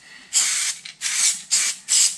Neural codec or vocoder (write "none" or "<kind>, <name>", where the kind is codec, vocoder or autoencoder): none